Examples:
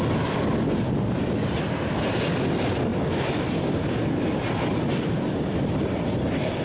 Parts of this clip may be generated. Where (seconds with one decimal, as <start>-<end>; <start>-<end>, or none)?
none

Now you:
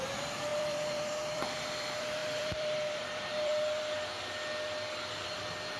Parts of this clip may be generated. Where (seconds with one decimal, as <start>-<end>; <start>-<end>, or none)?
0.0-4.1

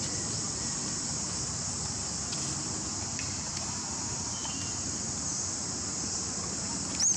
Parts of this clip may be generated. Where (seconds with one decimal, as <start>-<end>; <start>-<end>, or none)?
none

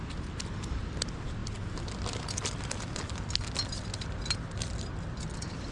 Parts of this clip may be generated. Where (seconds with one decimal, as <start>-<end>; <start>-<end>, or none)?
none